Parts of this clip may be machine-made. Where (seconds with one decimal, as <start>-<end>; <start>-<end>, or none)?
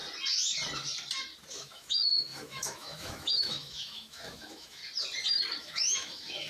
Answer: 1.5-4.8; 5.6-6.5